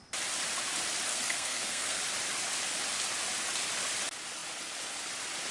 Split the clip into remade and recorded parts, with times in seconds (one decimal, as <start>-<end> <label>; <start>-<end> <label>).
0.0-1.1 recorded; 1.1-2.0 remade; 2.0-5.5 recorded